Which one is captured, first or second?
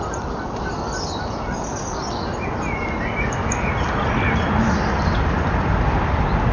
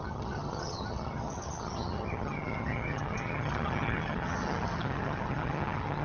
first